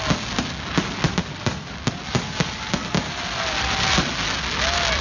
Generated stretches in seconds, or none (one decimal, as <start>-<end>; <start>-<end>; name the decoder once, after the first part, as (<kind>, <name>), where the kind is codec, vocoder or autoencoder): none

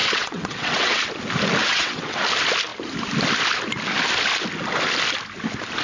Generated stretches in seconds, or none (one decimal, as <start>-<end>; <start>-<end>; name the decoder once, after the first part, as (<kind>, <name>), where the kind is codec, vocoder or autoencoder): 0.0-1.0 (vocoder, WaveNeXt); 1.6-2.2